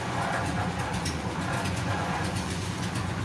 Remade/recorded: remade